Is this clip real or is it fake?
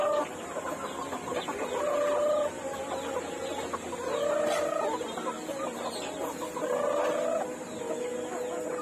real